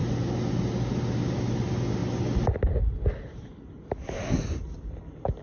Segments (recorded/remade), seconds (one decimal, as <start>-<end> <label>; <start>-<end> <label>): 0.0-5.4 recorded